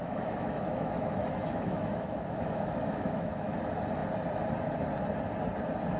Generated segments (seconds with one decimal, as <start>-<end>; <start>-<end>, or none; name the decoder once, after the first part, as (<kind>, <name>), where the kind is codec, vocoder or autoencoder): 0.0-3.6 (autoencoder, DAC-VAE)